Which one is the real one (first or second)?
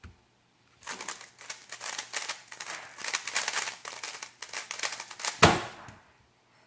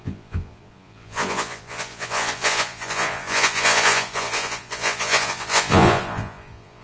first